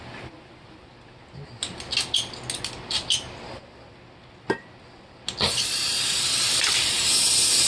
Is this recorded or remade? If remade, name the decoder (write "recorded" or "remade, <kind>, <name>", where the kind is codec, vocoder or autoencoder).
recorded